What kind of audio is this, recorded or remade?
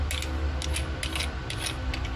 recorded